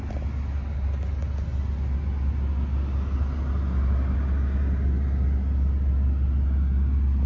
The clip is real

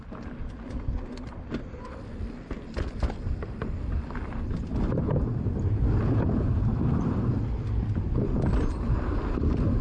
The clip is real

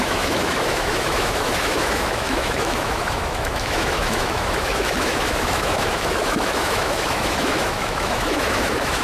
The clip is fake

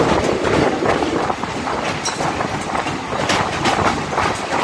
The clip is real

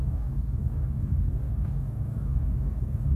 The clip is fake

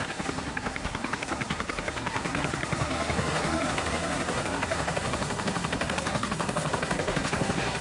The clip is fake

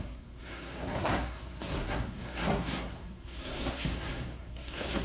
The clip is fake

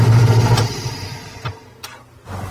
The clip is real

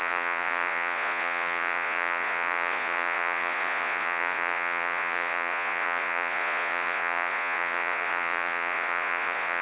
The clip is fake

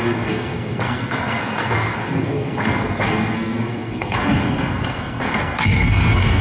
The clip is fake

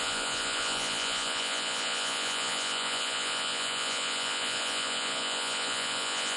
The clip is fake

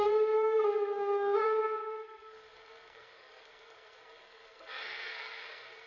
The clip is fake